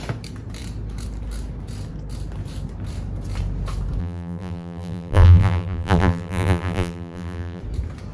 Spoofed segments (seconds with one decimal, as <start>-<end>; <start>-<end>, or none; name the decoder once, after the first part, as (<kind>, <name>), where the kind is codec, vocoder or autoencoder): 4.0-7.6 (vocoder, BigVGAN v2)